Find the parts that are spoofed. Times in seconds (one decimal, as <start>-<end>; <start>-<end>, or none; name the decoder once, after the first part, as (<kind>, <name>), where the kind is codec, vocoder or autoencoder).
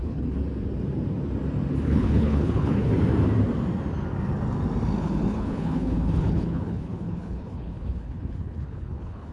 0.0-0.4 (codec, HILCodec); 1.8-2.9; 5.0-9.3